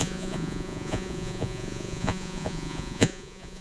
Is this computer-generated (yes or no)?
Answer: yes